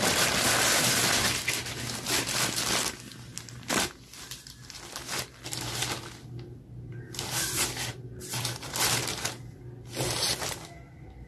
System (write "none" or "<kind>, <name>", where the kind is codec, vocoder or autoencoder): none